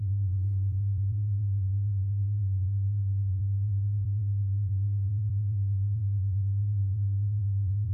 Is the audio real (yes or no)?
no